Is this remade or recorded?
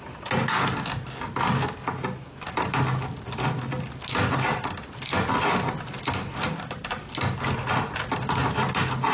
recorded